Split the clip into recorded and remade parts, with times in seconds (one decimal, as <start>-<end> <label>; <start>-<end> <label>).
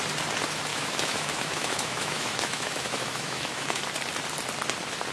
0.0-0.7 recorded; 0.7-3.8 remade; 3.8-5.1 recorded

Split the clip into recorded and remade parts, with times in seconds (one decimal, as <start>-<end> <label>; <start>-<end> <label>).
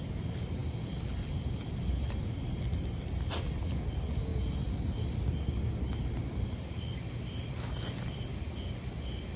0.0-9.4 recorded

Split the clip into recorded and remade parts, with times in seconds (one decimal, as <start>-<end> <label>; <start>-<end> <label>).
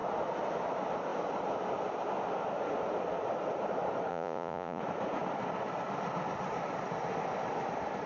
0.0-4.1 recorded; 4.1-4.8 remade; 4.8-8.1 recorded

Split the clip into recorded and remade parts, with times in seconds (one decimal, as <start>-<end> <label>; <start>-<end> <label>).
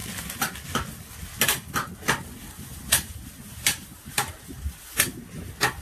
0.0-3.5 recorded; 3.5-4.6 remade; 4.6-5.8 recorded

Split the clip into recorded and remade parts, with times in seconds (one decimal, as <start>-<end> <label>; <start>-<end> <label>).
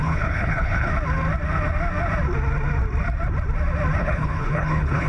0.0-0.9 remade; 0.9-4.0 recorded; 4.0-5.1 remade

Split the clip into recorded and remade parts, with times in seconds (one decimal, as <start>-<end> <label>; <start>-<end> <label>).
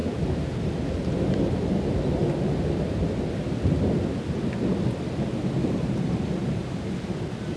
0.0-2.2 remade; 2.2-5.4 recorded; 5.4-6.6 remade; 6.6-7.6 recorded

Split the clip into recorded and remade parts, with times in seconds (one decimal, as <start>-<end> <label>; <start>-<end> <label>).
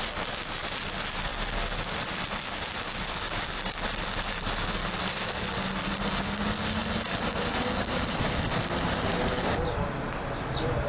0.0-10.9 recorded